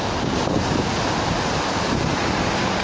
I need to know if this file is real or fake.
real